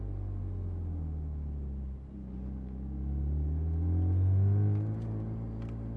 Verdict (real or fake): real